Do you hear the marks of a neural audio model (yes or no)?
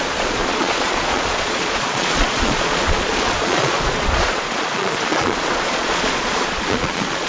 yes